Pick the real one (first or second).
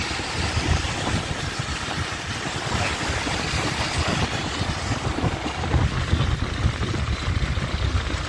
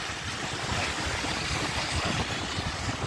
first